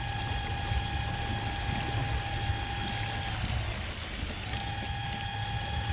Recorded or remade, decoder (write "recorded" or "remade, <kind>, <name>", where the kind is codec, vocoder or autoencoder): recorded